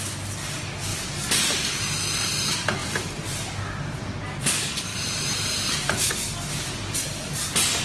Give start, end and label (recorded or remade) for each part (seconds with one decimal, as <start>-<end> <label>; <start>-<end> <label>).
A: 0.0-0.9 recorded; 0.9-2.3 remade; 2.3-4.9 recorded; 4.9-6.1 remade; 6.1-7.8 recorded

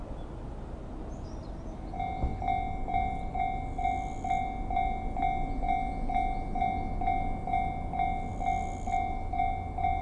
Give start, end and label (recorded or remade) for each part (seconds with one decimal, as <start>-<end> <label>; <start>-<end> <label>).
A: 0.0-10.0 recorded

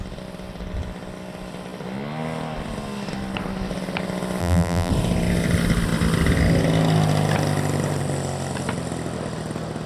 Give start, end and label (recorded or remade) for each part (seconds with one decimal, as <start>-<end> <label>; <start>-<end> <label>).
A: 0.0-4.4 recorded; 4.4-4.9 remade; 4.9-9.9 recorded

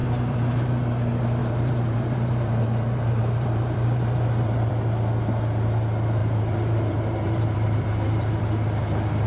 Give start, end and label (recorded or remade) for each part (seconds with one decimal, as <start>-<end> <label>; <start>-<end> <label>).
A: 0.0-0.9 remade; 0.9-1.4 recorded; 1.4-4.7 remade; 4.7-6.2 recorded; 6.2-8.5 remade; 8.5-9.3 recorded

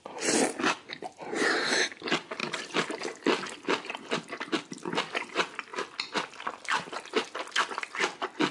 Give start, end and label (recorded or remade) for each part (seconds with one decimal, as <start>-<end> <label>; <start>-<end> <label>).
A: 0.0-5.7 remade; 5.7-6.3 recorded; 6.3-8.5 remade

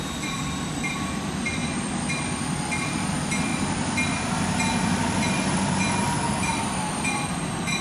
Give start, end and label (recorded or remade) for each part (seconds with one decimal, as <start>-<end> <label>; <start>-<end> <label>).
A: 0.0-3.5 remade; 3.5-5.3 recorded; 5.3-7.8 remade

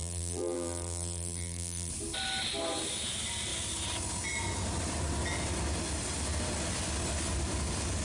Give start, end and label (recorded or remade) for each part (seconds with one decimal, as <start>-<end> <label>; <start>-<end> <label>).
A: 0.0-1.9 remade; 1.9-8.0 recorded

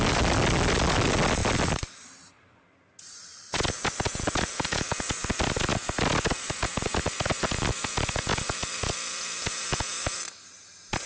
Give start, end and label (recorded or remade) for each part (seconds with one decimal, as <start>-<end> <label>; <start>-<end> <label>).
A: 0.0-1.4 recorded; 1.4-4.2 remade; 4.2-11.1 recorded